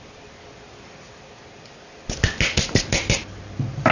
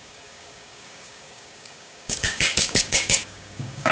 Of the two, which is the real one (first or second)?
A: first